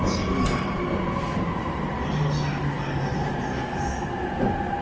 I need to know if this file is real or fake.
real